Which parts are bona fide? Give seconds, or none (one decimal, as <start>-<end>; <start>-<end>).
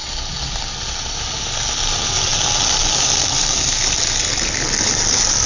0.0-5.5